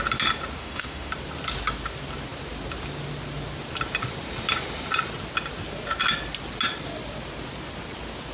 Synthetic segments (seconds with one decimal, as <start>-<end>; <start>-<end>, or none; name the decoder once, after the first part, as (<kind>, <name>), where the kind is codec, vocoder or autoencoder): 0.6-1.1 (autoencoder, DAC-VAE)